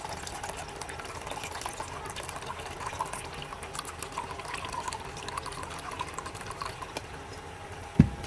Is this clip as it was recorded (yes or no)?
yes